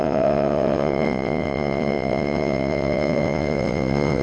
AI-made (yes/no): yes